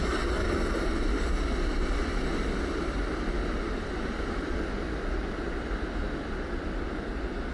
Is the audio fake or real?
real